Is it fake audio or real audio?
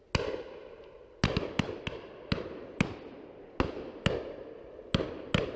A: real